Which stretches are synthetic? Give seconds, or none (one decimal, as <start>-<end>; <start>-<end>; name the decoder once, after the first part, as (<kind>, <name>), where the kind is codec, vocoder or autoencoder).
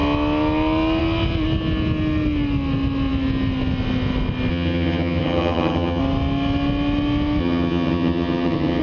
4.5-6.0 (vocoder, HiFi-GAN); 7.4-8.8